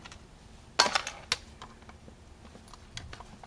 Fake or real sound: real